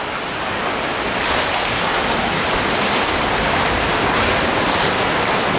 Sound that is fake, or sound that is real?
real